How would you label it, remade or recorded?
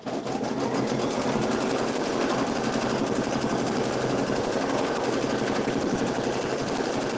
recorded